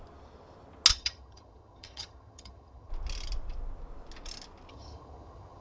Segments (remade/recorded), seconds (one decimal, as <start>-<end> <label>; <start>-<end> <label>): 0.0-0.9 recorded; 0.9-2.9 remade; 2.9-4.7 recorded; 4.7-5.6 remade